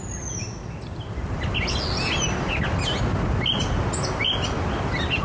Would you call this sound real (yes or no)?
yes